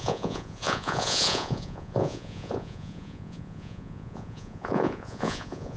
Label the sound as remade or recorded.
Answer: remade